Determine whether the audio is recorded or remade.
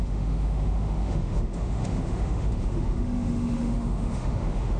remade